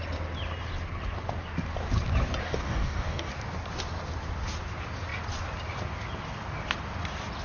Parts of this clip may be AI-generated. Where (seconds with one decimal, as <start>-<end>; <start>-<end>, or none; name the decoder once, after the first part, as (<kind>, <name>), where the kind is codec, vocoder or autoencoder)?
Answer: 2.4-3.3 (codec, DAC)